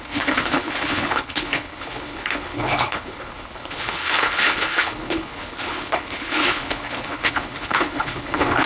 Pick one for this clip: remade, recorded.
remade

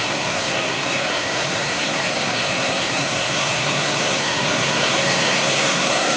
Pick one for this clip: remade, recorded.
remade